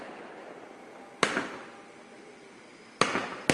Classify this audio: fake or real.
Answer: real